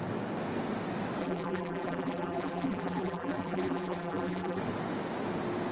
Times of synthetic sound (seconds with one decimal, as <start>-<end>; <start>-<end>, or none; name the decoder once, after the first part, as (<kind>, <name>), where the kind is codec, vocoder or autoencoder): 1.2-4.6 (vocoder, BigVGAN v2)